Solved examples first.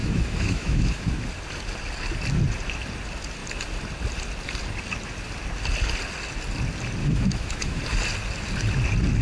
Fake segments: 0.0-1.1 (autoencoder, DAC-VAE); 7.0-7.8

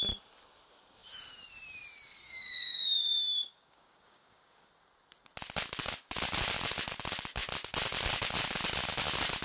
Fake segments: 2.2-4.7 (codec, DAC)